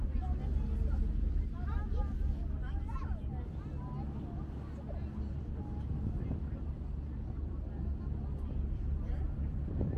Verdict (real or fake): real